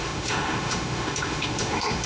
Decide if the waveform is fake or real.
fake